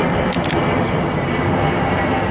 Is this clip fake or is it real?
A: fake